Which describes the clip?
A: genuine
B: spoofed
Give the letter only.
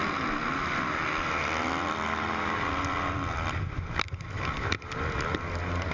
A